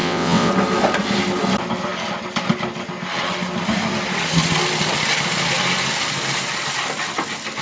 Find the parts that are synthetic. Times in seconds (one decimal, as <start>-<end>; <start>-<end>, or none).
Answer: 0.0-0.5